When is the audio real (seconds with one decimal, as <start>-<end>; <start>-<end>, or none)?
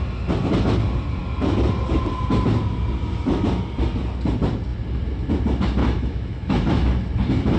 0.0-5.8; 6.9-7.6